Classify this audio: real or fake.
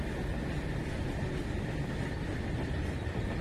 fake